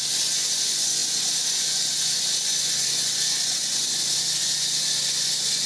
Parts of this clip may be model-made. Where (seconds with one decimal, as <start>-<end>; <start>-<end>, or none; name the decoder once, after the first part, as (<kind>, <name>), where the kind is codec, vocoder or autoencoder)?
0.0-5.7 (vocoder, Vocos)